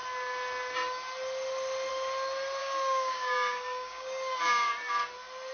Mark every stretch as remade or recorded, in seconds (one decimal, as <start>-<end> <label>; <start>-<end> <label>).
0.0-2.6 recorded; 2.6-4.7 remade; 4.7-5.5 recorded